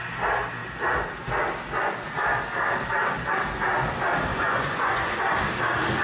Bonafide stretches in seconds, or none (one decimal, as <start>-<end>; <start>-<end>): 0.0-4.3; 5.2-6.0